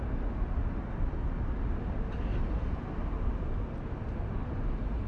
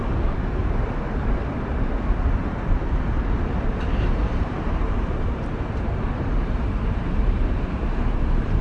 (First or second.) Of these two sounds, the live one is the first